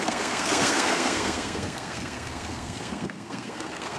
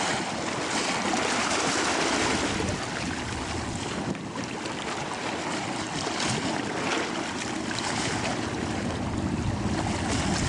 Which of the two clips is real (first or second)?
second